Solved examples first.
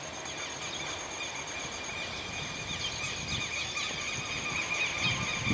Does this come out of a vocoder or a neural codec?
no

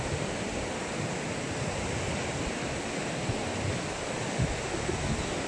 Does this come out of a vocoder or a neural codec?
no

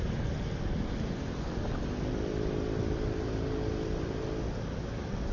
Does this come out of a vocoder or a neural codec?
no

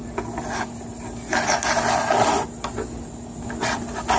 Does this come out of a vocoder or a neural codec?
no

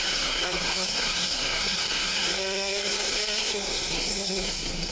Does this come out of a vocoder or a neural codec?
yes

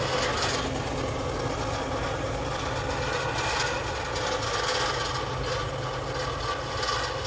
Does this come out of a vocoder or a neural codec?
no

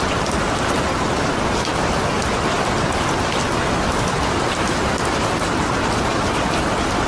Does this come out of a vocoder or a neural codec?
no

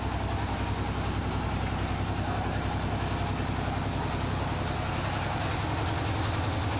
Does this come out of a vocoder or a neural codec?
no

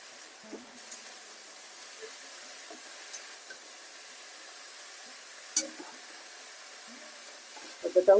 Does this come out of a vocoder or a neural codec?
no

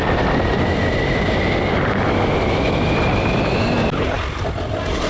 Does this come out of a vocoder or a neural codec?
no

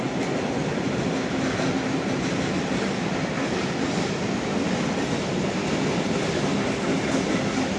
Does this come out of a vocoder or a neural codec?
no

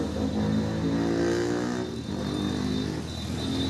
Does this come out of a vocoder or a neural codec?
no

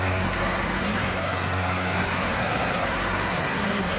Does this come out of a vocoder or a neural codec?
yes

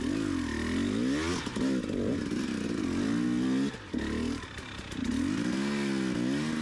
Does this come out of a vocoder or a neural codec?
no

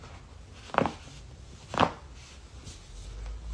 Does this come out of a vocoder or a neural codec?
no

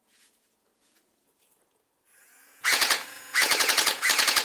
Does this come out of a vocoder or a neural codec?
yes